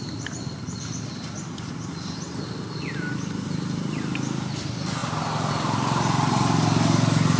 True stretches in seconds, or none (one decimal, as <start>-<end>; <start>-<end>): 0.0-7.4